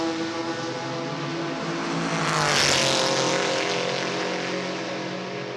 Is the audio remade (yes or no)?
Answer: no